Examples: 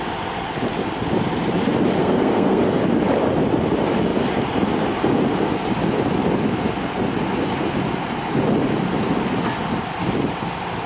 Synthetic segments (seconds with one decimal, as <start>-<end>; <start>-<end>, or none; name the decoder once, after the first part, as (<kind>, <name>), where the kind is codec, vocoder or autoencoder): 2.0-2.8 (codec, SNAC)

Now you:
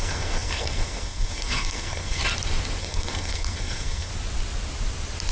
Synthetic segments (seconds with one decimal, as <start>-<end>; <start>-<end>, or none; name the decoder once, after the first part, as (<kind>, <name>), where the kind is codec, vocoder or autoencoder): 0.0-2.2 (codec, SNAC); 2.8-4.1

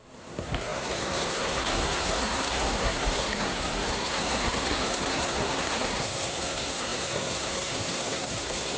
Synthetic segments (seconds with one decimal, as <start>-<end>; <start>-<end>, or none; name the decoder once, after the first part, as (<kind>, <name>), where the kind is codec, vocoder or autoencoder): 0.0-8.8 (codec, SNAC)

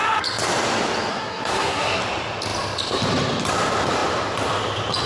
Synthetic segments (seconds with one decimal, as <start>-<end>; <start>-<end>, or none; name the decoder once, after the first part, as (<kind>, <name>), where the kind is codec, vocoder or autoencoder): 1.1-2.0 (codec, SNAC)